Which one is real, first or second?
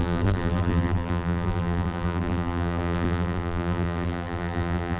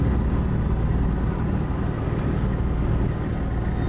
second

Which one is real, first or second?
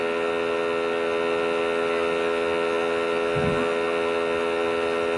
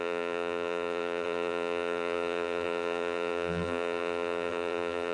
first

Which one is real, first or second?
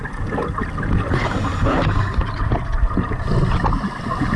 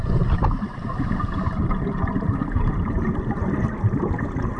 first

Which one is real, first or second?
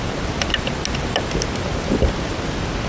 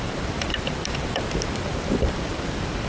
first